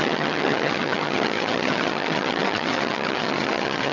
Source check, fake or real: fake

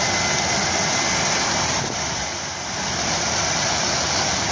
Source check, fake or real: real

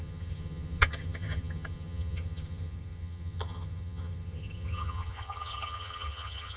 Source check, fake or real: fake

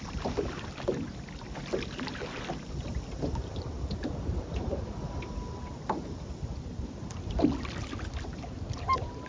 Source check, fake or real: real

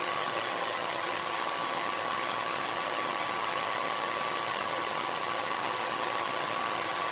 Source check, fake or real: fake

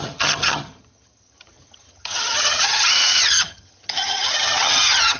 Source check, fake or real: fake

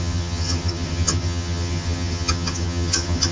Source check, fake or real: fake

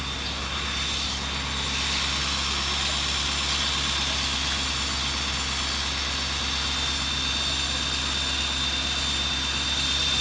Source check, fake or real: real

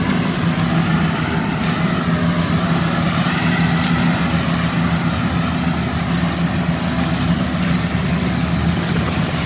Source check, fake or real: real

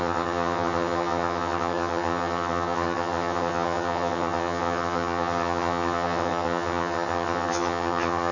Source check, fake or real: fake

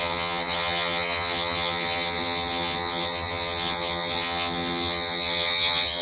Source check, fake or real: fake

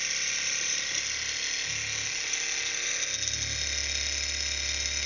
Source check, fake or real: real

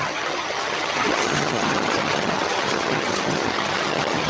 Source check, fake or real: fake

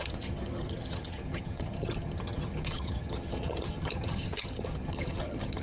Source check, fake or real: fake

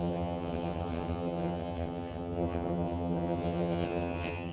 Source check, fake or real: fake